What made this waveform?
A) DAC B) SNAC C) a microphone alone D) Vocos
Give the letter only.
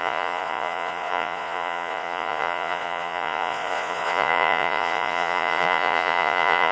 D